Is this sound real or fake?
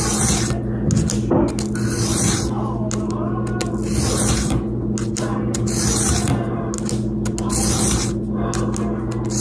real